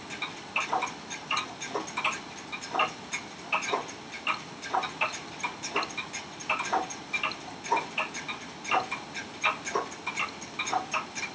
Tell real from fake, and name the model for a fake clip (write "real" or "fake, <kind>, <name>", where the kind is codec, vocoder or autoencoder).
real